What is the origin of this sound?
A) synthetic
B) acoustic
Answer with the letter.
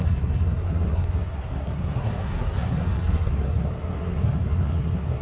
A